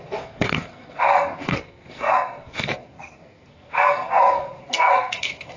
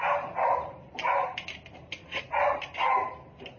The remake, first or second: first